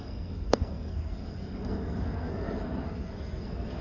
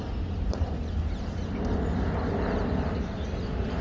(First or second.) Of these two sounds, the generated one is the first